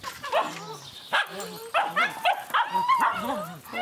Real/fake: real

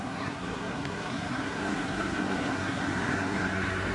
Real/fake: fake